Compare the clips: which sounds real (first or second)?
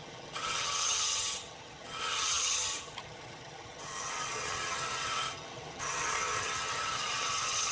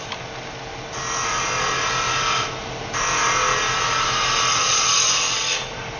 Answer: second